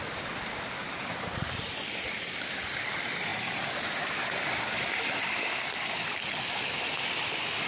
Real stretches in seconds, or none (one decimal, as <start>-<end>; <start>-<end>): 0.0-7.7